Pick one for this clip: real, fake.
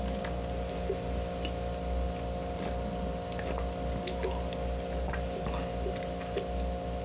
real